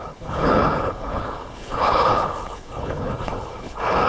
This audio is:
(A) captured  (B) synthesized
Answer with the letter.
B